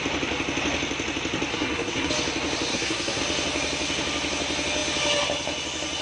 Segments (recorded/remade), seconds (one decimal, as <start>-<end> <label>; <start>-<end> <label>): 0.0-1.5 recorded; 1.5-2.1 remade; 2.1-2.7 recorded; 2.7-3.2 remade; 3.2-6.0 recorded